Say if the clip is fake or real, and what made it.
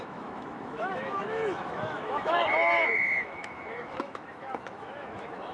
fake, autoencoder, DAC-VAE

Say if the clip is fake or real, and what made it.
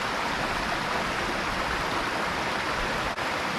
real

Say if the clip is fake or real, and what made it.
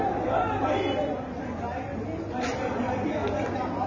real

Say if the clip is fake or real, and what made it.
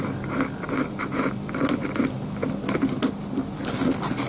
real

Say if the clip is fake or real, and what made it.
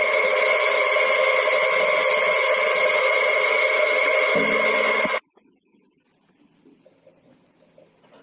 real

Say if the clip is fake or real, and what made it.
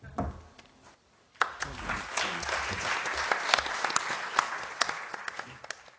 real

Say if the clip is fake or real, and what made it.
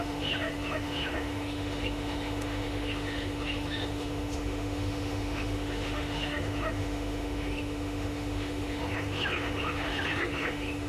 fake, autoencoder, DAC-VAE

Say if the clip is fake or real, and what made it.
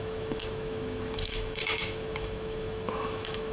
fake, autoencoder, DAC-VAE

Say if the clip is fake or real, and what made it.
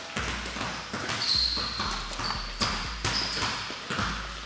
real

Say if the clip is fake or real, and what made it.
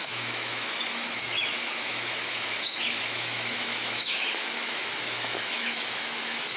fake, autoencoder, DAC-VAE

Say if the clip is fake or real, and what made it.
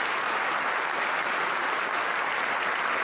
real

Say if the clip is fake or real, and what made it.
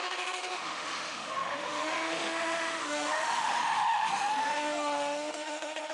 fake, autoencoder, DAC-VAE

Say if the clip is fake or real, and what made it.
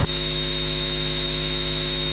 fake, autoencoder, DAC-VAE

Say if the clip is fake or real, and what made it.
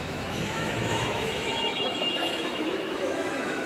fake, autoencoder, DAC-VAE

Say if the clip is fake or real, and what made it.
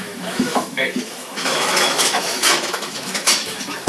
fake, autoencoder, DAC-VAE